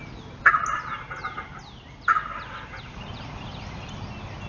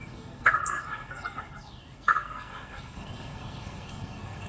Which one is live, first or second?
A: first